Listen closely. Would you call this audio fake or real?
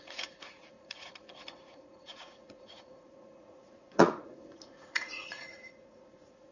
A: fake